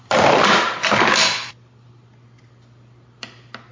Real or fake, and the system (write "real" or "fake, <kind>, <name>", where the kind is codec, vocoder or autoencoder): real